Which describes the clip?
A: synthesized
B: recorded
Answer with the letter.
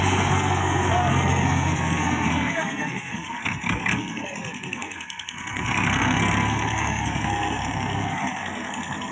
A